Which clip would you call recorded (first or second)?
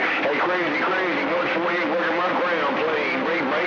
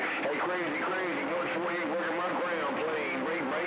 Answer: second